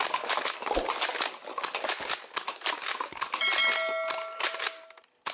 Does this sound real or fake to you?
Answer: real